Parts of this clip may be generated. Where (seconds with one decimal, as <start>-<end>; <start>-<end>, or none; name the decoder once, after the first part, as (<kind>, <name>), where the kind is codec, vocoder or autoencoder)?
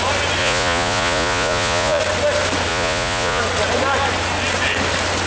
0.4-2.0 (vocoder, Vocos); 2.7-3.4